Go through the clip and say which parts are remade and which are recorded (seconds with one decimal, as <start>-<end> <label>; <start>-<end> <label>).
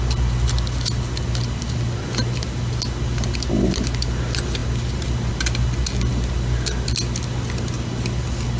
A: 0.0-8.6 recorded